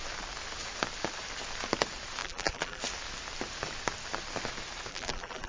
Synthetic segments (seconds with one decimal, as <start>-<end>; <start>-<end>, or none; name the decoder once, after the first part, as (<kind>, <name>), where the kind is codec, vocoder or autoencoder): 2.2-2.8 (vocoder, BigVGAN v2); 4.9-5.5